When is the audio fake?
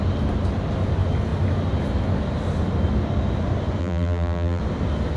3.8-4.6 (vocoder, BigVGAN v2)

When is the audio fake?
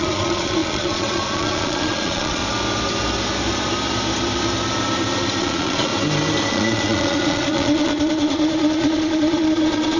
0.0-2.4 (vocoder, Vocos); 5.4-5.9; 6.5-10.0